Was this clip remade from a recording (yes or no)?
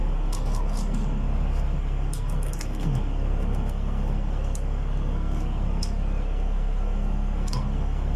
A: yes